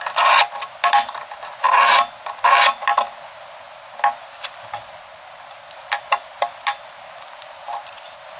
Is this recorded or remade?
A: recorded